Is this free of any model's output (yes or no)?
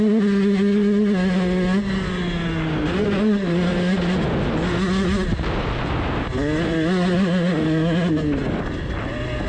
yes